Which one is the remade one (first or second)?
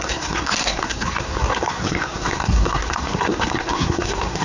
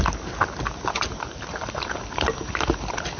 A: first